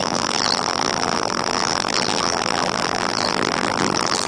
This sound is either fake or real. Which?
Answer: fake